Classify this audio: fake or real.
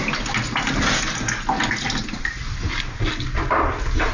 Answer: real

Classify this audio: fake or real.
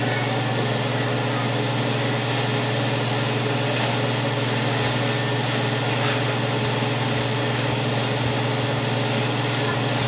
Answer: real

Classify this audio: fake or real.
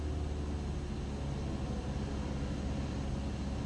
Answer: real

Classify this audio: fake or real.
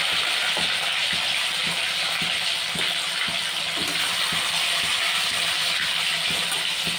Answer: real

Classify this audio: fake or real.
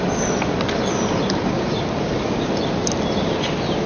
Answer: real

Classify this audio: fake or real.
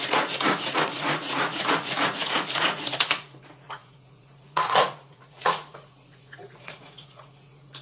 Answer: fake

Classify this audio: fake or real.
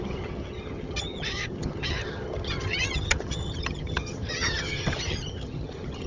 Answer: fake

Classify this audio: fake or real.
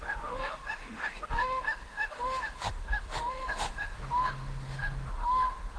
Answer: fake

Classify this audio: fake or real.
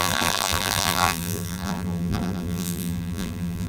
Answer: fake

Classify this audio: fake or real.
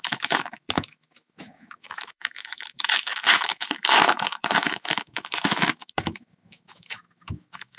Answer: fake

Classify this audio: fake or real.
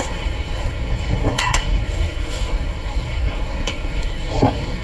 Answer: fake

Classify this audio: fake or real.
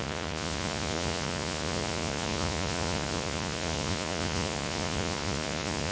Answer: fake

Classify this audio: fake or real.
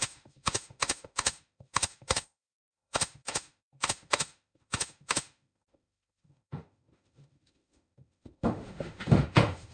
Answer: fake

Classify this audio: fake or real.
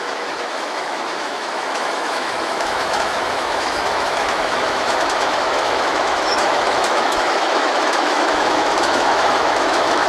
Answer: fake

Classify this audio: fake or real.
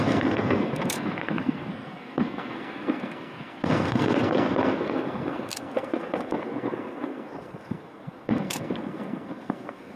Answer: fake